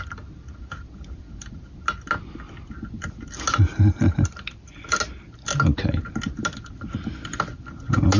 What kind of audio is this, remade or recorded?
recorded